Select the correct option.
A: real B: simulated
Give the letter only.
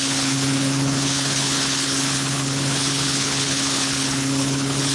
B